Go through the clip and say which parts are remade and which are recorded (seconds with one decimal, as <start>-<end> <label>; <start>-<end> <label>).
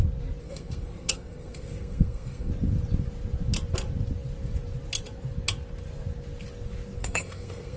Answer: 0.0-0.4 recorded; 0.4-2.5 remade; 2.5-7.0 recorded; 7.0-7.8 remade